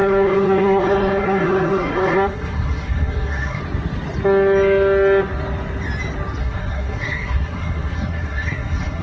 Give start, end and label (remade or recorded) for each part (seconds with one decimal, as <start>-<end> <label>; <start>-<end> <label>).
0.0-3.6 remade; 3.6-6.4 recorded; 6.4-9.0 remade

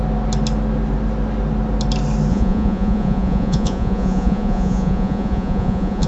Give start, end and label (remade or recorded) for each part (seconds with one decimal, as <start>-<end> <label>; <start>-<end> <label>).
0.0-2.3 recorded; 2.3-6.1 remade

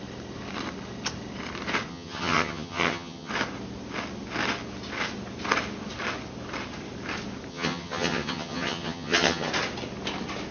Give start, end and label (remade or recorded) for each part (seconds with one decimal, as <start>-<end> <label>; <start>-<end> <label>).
0.0-1.9 recorded; 1.9-3.3 remade; 3.3-7.5 recorded; 7.5-9.5 remade; 9.5-10.5 recorded

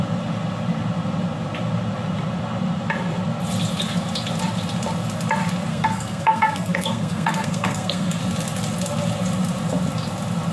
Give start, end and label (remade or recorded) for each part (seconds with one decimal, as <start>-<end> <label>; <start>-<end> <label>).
0.0-5.7 recorded; 5.7-8.2 remade; 8.2-10.5 recorded

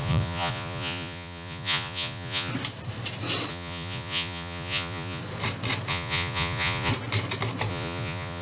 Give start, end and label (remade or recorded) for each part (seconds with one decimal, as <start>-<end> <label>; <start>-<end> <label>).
0.0-2.5 remade; 2.5-3.5 recorded; 3.5-5.2 remade; 5.2-5.9 recorded; 5.9-6.9 remade; 6.9-7.7 recorded; 7.7-8.4 remade